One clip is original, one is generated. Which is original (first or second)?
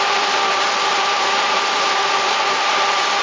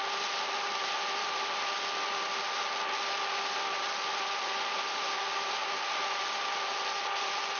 second